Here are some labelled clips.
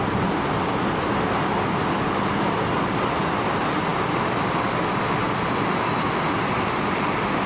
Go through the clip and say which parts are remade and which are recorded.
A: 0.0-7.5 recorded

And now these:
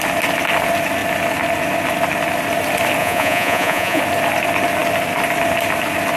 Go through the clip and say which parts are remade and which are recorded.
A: 0.0-3.0 recorded; 3.0-4.0 remade; 4.0-6.2 recorded